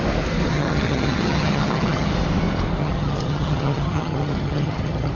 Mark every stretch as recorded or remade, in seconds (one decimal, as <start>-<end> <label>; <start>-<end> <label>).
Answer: 0.0-0.5 recorded; 0.5-2.1 remade; 2.1-2.8 recorded; 2.8-5.1 remade